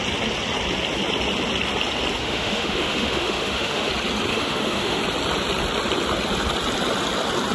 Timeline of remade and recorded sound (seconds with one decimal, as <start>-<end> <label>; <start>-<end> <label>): 0.0-2.2 recorded; 2.2-3.9 remade; 3.9-4.3 recorded; 4.3-5.0 remade; 5.0-7.5 recorded